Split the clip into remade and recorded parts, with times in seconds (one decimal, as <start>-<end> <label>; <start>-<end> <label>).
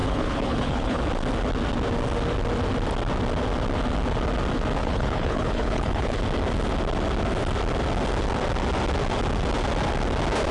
0.0-1.0 remade; 1.0-4.8 recorded; 4.8-6.2 remade; 6.2-10.5 recorded